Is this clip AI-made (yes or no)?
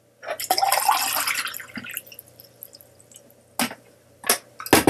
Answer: no